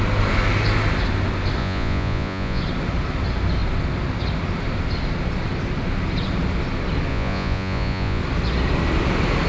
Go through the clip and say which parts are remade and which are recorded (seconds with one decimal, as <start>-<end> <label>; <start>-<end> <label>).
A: 0.0-1.6 recorded; 1.6-2.6 remade; 2.6-7.1 recorded; 7.1-8.2 remade; 8.2-9.5 recorded